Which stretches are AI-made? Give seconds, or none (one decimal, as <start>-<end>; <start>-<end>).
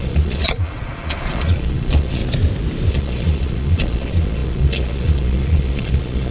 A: 0.0-2.2; 2.9-6.3